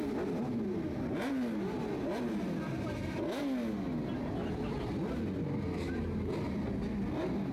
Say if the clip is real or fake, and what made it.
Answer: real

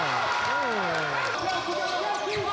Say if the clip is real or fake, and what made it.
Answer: real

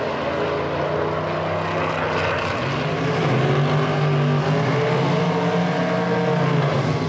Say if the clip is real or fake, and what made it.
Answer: real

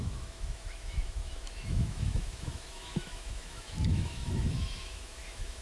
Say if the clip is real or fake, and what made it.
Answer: fake, autoencoder, DAC-VAE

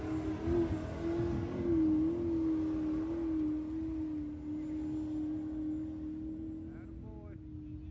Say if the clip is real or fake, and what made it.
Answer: real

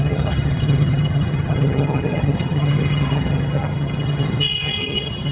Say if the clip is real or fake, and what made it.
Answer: fake, vocoder, HiFi-GAN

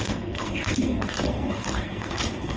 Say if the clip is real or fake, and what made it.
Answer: fake, codec, SNAC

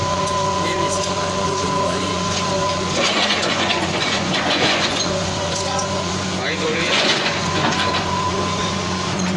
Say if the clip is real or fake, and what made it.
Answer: fake, vocoder, Vocos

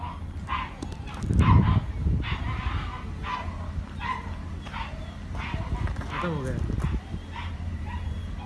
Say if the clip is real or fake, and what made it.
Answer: real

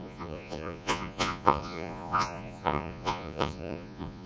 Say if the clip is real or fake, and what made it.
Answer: fake, vocoder, Vocos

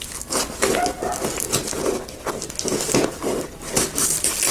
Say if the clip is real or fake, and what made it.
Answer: real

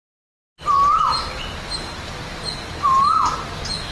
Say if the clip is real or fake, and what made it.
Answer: real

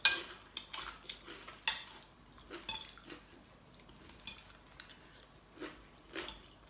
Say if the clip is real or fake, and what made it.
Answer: real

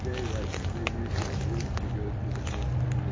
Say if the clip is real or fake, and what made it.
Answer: real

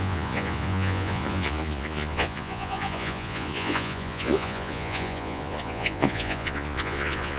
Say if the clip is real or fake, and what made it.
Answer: fake, vocoder, Vocos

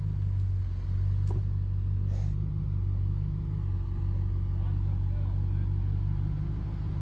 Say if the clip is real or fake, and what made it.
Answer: real